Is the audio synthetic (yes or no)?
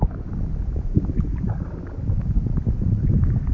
no